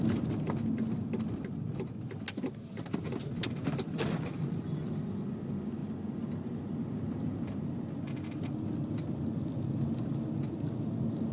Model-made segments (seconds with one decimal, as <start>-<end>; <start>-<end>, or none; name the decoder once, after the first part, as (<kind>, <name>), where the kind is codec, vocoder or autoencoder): none